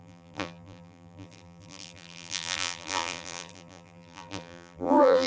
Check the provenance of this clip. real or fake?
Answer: fake